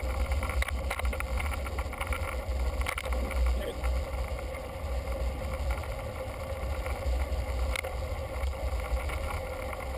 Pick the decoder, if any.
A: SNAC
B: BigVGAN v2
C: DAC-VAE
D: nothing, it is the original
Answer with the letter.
D